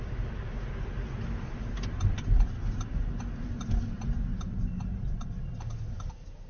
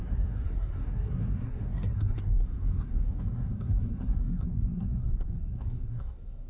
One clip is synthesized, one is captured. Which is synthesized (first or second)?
second